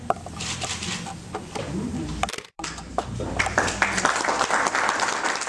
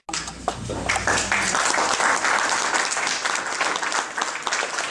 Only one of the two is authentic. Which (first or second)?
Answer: second